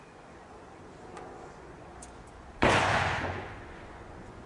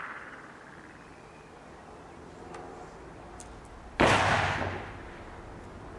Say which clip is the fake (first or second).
first